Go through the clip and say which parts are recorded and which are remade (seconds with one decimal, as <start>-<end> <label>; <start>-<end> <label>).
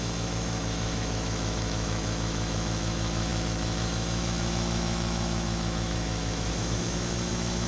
0.0-7.7 remade